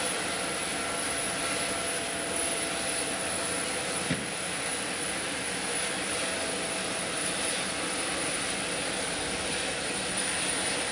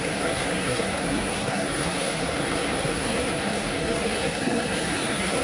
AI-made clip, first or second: second